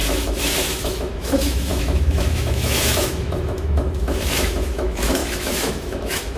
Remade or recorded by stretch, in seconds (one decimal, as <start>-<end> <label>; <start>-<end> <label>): 0.0-6.4 remade